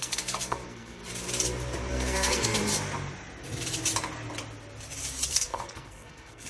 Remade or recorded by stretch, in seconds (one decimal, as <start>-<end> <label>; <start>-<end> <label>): 0.0-1.0 remade; 1.0-1.9 recorded; 1.9-2.6 remade; 2.6-5.3 recorded; 5.3-6.5 remade